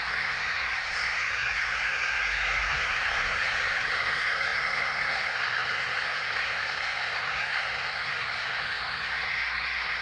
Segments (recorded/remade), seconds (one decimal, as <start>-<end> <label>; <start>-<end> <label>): 0.0-10.0 remade